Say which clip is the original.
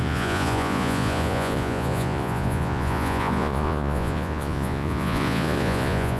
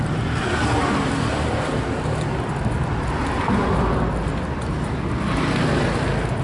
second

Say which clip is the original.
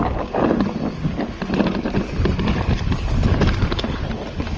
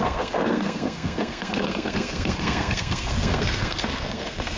first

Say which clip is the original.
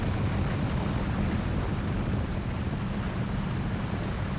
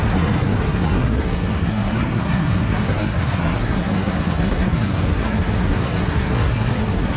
first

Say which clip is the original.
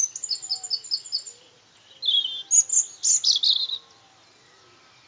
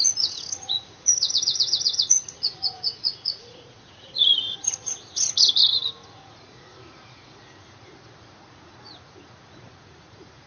first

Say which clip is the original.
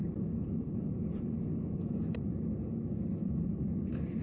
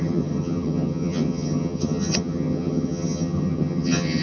first